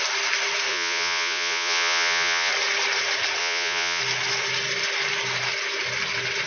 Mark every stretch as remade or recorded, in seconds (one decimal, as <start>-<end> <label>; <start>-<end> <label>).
0.0-0.7 recorded; 0.7-2.5 remade; 2.5-3.4 recorded; 3.4-4.0 remade; 4.0-6.5 recorded